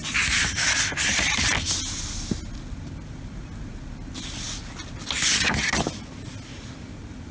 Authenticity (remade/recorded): recorded